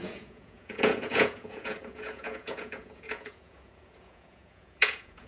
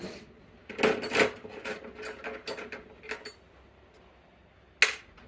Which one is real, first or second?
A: second